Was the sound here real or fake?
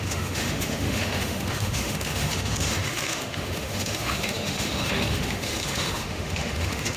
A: fake